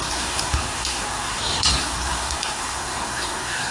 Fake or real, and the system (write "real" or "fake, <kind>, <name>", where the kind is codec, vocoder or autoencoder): fake, codec, SNAC